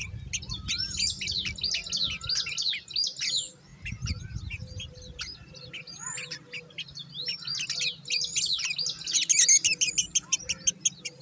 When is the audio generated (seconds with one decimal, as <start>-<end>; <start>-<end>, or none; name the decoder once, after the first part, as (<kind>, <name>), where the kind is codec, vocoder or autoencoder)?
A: none